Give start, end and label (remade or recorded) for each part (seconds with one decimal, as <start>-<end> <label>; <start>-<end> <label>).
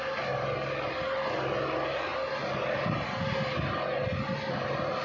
0.0-5.0 recorded